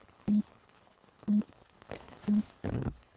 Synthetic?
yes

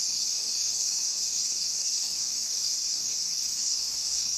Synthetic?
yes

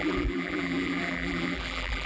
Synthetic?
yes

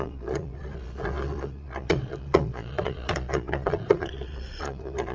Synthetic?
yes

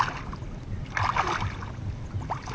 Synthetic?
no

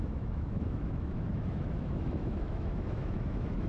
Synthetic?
yes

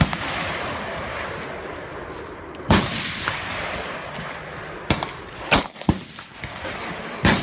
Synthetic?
no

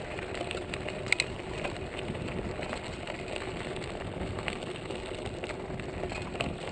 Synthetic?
no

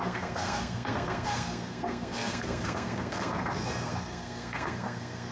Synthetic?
yes